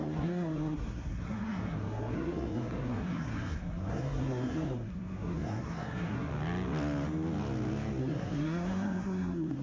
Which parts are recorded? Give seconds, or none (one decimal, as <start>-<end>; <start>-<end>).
6.3-8.0